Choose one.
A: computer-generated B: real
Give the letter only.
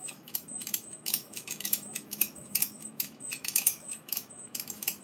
A